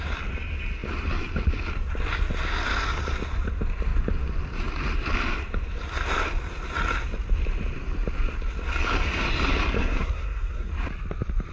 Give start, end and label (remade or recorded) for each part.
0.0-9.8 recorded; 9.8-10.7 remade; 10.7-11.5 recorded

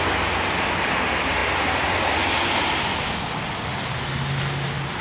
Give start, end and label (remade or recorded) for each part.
0.0-5.0 recorded

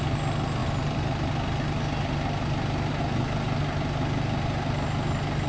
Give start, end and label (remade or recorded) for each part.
0.0-5.5 recorded

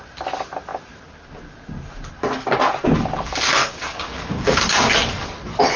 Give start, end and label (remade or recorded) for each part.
0.0-3.6 recorded; 3.6-4.6 remade; 4.6-5.8 recorded

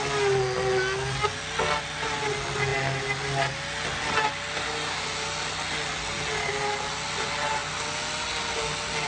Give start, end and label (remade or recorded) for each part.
0.0-9.1 recorded

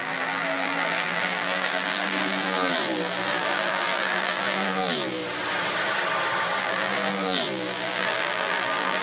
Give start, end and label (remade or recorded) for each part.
0.0-5.2 remade; 5.2-6.6 recorded; 6.6-9.0 remade

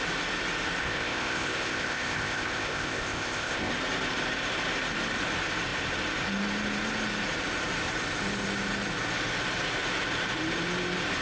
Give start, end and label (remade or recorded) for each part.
0.0-0.8 recorded; 0.8-3.7 remade; 3.7-11.2 recorded